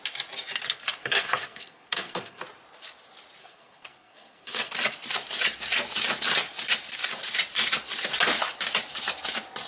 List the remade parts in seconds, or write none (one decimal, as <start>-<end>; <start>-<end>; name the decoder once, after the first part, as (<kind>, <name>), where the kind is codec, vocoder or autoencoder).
1.0-2.4 (codec, SNAC); 3.4-4.7